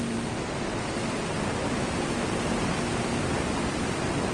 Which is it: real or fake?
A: real